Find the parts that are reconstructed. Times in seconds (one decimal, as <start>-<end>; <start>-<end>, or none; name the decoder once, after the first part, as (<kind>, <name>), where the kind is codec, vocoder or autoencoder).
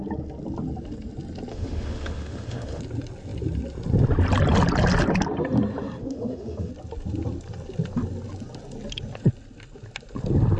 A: 1.5-2.8 (autoencoder, DAC-VAE); 6.0-6.7